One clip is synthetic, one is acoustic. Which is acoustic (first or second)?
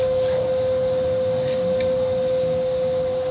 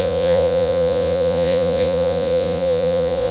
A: first